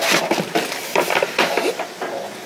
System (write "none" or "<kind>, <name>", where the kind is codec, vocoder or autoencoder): none